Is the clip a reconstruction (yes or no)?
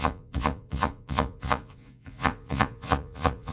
yes